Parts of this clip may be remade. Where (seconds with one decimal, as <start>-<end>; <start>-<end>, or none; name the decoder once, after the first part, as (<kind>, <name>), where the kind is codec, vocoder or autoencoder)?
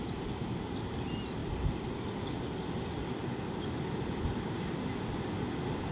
none